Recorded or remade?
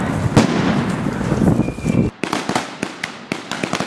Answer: recorded